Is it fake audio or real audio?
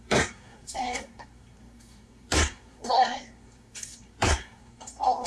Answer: fake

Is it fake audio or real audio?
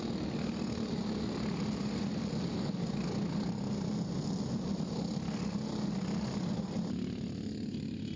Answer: real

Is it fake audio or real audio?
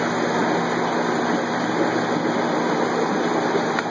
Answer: real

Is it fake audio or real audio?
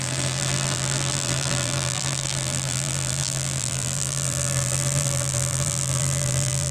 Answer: fake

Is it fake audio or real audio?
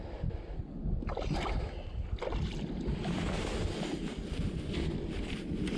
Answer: real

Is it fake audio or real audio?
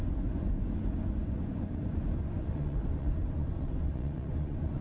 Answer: fake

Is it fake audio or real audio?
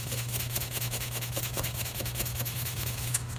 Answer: fake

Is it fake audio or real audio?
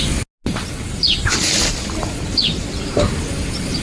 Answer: real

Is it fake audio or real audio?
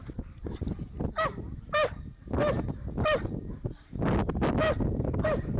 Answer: real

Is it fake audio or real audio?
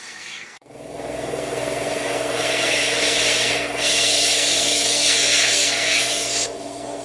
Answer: fake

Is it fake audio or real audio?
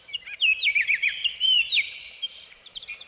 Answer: fake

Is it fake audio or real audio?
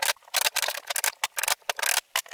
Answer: real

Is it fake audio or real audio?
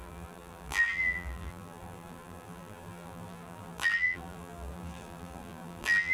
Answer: fake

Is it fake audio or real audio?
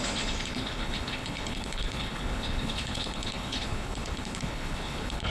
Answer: fake